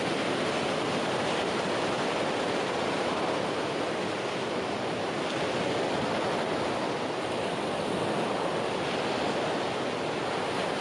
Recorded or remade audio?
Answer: recorded